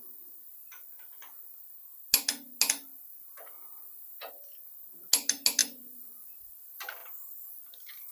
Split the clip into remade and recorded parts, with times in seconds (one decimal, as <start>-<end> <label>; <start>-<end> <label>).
0.0-5.6 recorded; 5.6-6.3 remade; 6.3-8.1 recorded